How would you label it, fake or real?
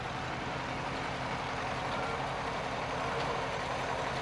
real